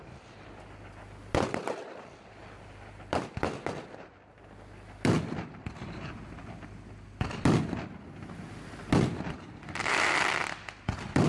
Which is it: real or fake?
fake